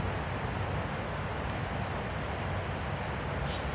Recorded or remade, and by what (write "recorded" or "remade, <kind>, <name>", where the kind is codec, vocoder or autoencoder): recorded